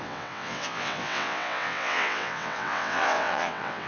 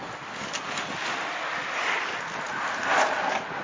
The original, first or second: second